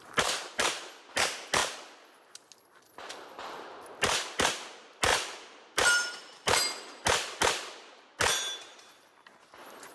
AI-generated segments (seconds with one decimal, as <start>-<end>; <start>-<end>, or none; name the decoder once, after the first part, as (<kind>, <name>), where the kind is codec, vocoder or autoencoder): 5.1-6.6 (vocoder, BigVGAN v2)